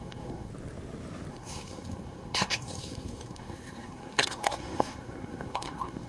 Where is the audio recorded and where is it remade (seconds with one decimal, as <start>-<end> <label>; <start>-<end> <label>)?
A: 0.0-0.5 remade; 0.5-1.3 recorded; 1.3-6.1 remade